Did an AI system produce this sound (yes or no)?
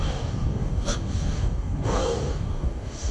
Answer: yes